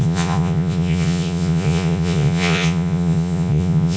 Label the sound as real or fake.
fake